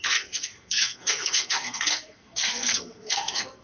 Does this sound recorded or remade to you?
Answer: remade